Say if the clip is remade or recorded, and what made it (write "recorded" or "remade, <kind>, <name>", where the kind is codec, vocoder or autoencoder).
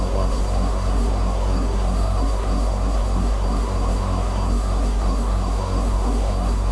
remade, codec, SNAC